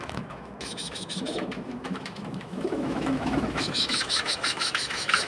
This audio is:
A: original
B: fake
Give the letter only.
B